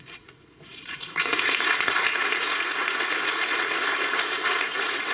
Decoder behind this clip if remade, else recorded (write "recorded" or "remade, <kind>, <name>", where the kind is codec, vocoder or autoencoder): remade, vocoder, Vocos